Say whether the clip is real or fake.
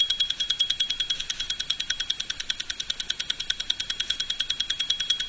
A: real